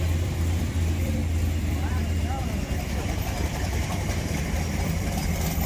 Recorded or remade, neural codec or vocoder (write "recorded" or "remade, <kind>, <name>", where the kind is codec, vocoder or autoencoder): remade, vocoder, BigVGAN v2